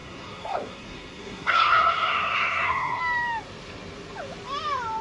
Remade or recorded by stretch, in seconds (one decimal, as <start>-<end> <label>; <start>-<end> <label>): 0.0-3.0 remade; 3.0-5.0 recorded